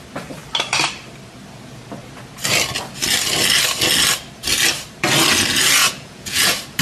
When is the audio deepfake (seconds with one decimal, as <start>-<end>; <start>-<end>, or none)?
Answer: 5.8-6.8